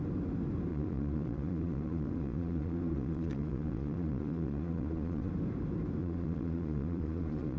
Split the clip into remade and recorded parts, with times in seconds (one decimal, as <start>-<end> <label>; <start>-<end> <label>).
0.0-0.7 recorded; 0.7-5.3 remade; 5.3-6.0 recorded; 6.0-7.6 remade